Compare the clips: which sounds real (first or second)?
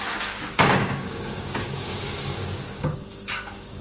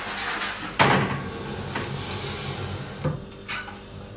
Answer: second